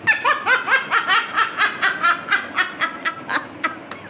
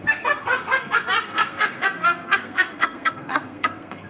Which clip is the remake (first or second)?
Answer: second